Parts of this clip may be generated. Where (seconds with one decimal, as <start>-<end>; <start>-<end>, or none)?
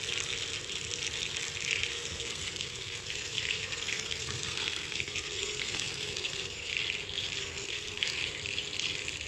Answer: 1.9-6.7; 7.4-8.2